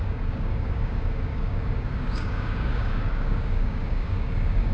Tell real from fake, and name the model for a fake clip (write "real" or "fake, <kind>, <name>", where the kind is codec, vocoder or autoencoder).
fake, codec, DAC